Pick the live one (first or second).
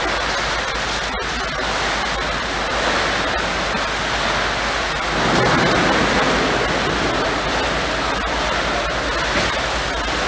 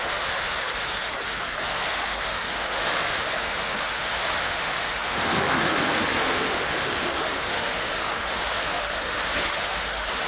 first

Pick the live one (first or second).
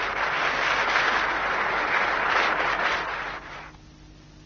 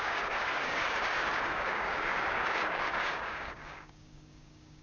first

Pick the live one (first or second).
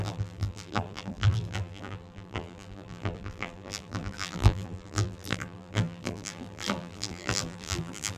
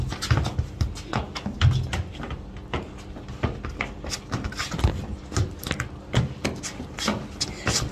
second